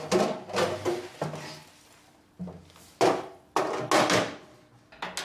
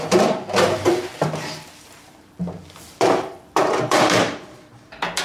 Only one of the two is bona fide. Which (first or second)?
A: first